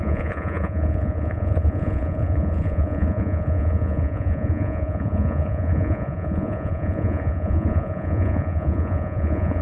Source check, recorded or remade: remade